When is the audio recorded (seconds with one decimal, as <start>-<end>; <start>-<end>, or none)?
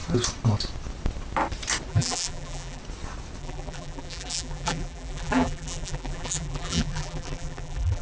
0.0-1.9; 2.8-3.4